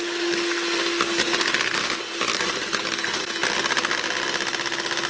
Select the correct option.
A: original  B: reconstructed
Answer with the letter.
A